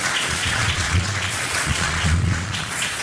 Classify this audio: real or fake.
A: fake